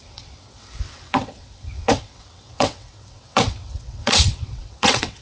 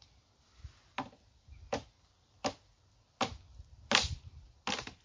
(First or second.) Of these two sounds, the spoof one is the first